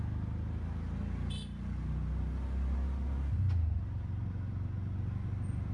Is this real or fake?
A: real